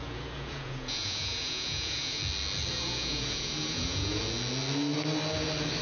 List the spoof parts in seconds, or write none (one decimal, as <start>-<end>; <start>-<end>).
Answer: 0.0-2.2; 2.7-4.2